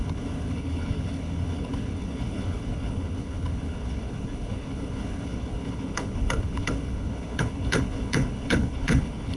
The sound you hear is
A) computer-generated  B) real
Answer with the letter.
A